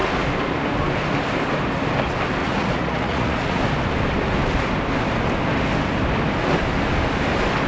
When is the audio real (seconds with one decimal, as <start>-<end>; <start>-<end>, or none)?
0.0-2.4; 3.6-7.7